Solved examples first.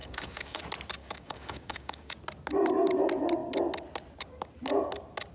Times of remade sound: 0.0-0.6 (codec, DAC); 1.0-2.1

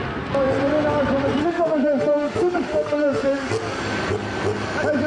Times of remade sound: 1.4-3.5 (autoencoder, DAC-VAE)

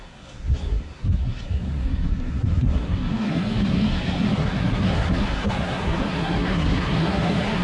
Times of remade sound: 0.0-7.6 (codec, SNAC)

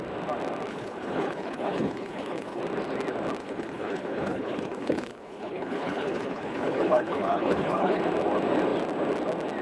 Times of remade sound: 0.7-2.6 (codec, HILCodec); 3.4-8.0

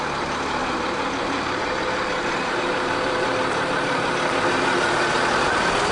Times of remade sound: 0.6-4.1 (vocoder, BigVGAN v2)

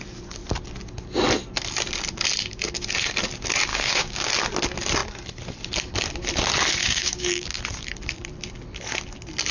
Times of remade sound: 3.7-4.3 (codec, DAC); 6.8-7.6

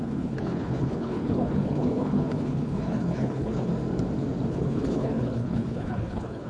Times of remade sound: 0.0-3.7 (codec, HILCodec); 4.5-6.5